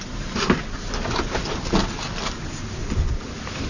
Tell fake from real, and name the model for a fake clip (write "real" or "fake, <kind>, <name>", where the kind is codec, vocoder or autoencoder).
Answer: real